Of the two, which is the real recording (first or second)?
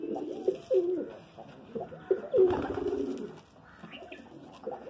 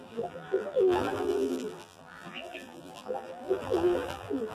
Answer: first